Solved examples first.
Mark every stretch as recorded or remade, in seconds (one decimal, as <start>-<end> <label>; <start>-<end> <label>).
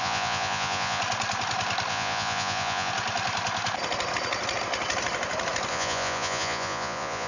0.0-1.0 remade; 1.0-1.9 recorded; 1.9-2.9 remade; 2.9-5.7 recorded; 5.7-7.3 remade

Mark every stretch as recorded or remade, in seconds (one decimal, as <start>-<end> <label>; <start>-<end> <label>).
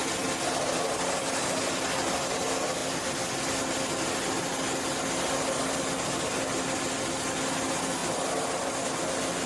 0.0-2.0 remade; 2.0-8.0 recorded; 8.0-8.7 remade; 8.7-9.5 recorded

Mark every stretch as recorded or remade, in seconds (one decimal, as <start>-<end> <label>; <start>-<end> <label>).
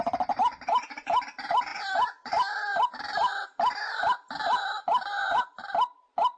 0.0-6.4 recorded